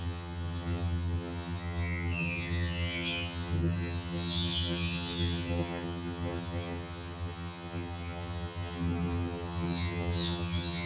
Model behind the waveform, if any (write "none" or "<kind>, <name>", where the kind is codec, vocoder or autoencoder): vocoder, HiFi-GAN